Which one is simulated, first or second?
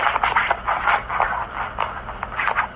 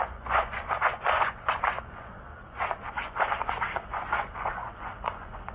second